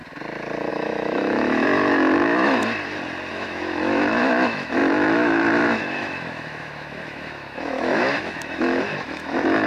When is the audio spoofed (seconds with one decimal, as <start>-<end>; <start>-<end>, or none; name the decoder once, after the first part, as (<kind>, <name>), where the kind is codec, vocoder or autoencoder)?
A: 0.7-2.6 (autoencoder, DAC-VAE); 3.3-9.7